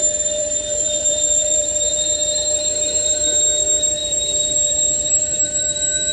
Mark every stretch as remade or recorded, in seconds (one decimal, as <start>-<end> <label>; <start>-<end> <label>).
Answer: 0.0-0.4 recorded; 0.4-1.9 remade; 1.9-4.0 recorded; 4.0-6.1 remade